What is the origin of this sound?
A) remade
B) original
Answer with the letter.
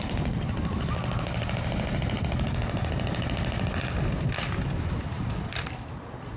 B